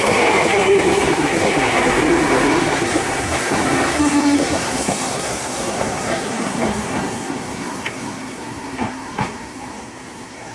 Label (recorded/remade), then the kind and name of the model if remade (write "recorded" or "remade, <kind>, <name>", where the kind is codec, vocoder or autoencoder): remade, codec, SNAC